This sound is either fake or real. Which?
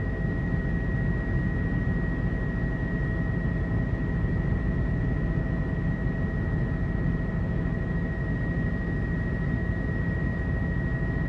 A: real